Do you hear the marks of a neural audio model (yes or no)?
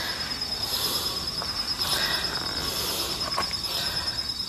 no